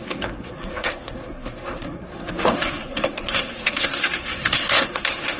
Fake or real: fake